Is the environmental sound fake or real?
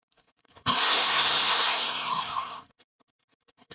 fake